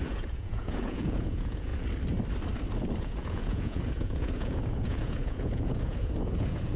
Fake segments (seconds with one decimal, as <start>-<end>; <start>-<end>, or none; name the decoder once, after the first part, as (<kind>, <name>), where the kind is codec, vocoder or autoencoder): 0.0-1.7 (vocoder, Vocos); 3.0-6.8